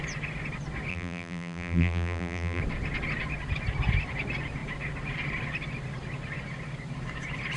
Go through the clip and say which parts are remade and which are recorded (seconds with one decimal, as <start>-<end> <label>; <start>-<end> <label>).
0.0-0.9 recorded; 0.9-2.6 remade; 2.6-7.6 recorded